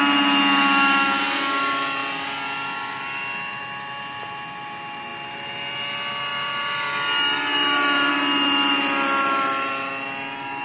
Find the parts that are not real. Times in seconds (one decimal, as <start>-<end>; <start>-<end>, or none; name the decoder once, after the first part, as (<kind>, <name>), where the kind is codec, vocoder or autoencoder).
none